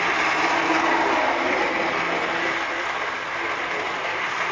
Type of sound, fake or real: real